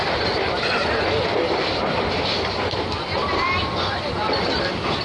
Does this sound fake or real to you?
real